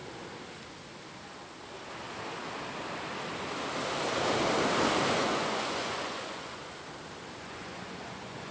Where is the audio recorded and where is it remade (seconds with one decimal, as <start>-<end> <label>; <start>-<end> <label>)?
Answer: 0.0-5.1 recorded; 5.1-6.6 remade; 6.6-7.4 recorded; 7.4-8.5 remade